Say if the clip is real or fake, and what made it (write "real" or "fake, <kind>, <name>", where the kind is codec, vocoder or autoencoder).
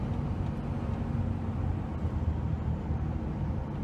real